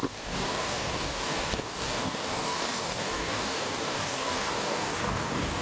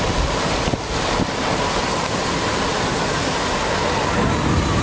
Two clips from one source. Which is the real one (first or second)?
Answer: second